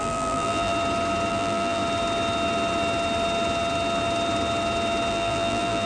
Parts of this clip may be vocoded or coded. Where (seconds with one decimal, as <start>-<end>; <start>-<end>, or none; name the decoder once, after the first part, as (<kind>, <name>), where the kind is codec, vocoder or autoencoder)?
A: 0.0-0.7 (vocoder, BigVGAN v2); 1.3-1.8; 5.1-5.9